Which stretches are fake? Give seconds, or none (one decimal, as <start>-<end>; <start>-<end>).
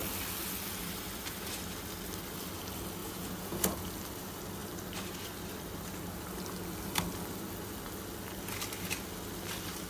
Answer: 3.0-3.9